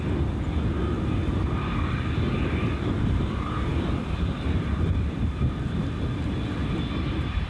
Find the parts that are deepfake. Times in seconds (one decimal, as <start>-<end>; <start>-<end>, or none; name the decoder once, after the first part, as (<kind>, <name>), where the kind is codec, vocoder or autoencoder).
none